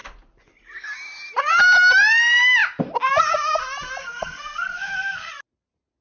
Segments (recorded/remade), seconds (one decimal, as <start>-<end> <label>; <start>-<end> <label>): 0.0-4.0 recorded; 4.0-5.3 remade; 5.3-6.0 recorded